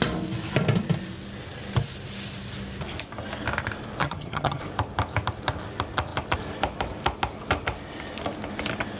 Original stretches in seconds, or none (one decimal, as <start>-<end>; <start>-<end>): 0.0-4.0; 4.6-9.0